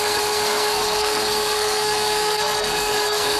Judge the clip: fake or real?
fake